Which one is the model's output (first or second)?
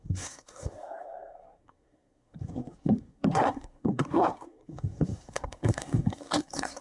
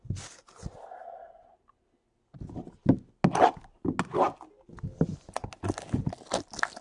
first